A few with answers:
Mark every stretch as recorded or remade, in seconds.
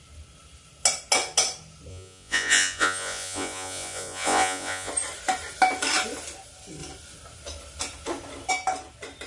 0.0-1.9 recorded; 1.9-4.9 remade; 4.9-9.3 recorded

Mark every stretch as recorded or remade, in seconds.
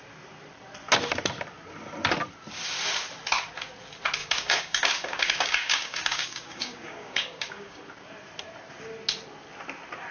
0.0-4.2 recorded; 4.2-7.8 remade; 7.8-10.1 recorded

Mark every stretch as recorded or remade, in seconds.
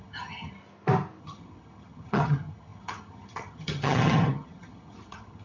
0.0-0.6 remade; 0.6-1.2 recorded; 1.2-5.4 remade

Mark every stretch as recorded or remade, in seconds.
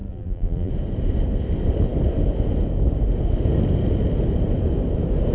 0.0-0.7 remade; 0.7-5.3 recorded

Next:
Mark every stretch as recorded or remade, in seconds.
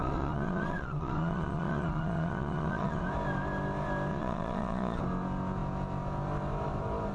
0.0-3.0 remade; 3.0-4.1 recorded; 4.1-5.0 remade; 5.0-7.1 recorded